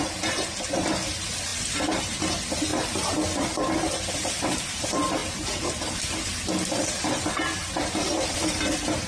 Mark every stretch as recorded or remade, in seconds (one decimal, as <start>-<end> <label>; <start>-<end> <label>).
0.0-9.1 recorded